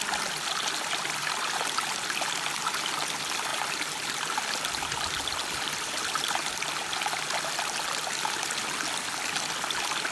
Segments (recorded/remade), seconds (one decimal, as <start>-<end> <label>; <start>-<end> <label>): 0.0-3.5 recorded; 3.5-6.5 remade; 6.5-10.1 recorded